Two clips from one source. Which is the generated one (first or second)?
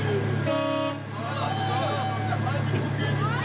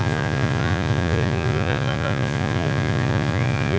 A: second